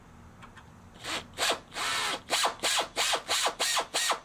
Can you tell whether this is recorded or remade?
recorded